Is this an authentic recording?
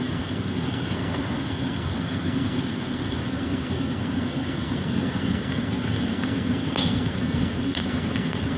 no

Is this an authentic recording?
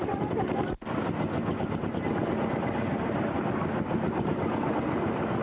yes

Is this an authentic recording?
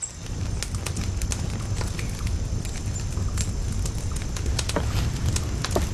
yes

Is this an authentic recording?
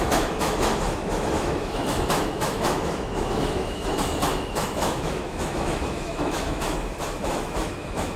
no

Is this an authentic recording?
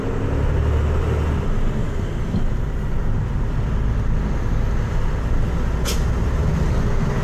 yes